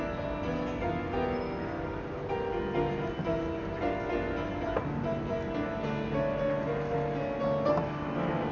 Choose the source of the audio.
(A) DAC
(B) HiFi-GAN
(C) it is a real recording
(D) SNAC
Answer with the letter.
C